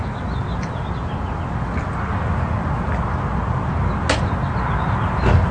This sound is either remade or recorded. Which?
recorded